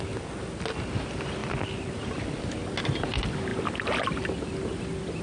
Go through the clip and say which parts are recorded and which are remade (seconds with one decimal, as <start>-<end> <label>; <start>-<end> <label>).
0.0-5.2 recorded